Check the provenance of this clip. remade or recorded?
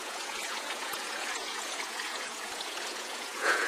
remade